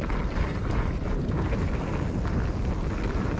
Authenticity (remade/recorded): recorded